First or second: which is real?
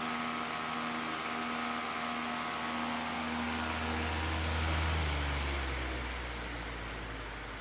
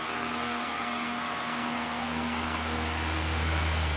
first